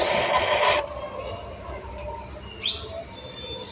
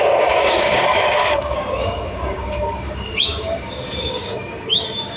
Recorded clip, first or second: first